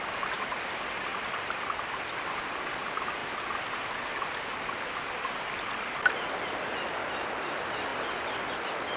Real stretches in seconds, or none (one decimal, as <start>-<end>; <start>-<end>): 0.0-1.1; 2.4-7.0; 7.5-9.0